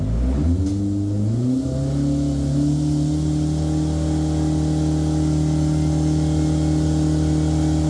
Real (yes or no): yes